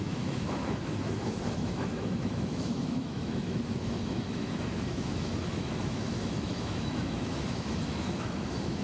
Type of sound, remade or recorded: remade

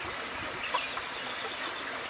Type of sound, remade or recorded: recorded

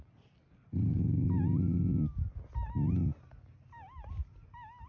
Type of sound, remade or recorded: recorded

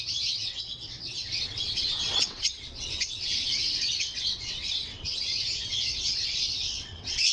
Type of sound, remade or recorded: remade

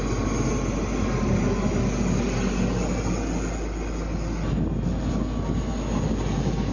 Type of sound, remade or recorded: recorded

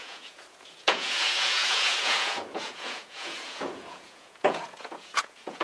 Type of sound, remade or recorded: remade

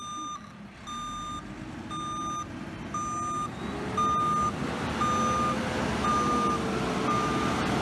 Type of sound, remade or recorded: recorded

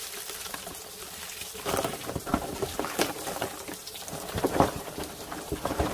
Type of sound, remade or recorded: remade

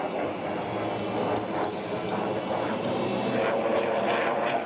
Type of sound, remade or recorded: recorded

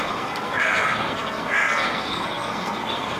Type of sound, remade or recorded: remade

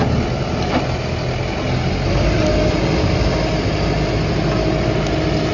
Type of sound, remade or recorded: recorded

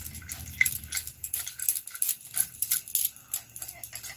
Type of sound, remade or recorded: recorded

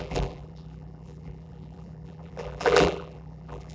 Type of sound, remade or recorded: remade